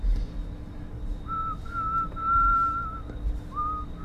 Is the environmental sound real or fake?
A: real